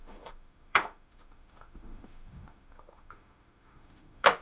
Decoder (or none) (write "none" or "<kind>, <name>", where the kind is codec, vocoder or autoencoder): autoencoder, DAC-VAE